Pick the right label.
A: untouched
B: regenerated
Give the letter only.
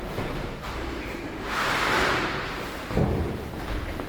B